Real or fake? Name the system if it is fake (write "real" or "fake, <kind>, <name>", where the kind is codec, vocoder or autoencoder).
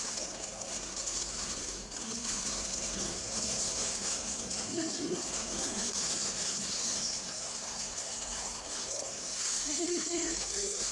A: fake, codec, SNAC